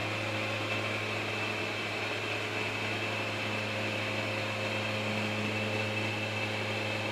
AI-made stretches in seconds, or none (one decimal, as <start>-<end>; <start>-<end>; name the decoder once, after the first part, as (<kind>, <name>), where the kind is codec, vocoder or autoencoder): none